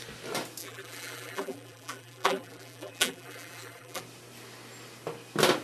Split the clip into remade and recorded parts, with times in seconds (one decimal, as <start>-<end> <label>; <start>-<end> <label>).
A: 0.0-0.6 recorded; 0.6-4.0 remade; 4.0-5.6 recorded